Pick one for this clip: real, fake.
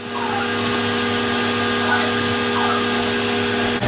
real